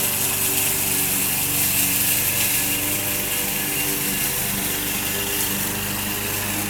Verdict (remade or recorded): recorded